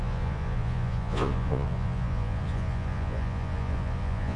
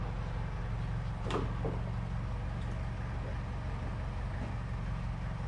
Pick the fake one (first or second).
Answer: first